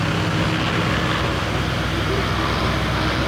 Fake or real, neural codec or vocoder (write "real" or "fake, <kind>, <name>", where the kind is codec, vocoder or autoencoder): real